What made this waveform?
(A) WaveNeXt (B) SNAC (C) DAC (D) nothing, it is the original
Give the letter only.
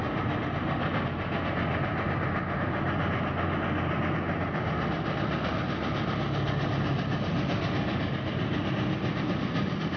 D